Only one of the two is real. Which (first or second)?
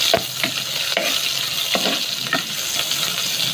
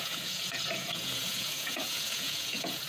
first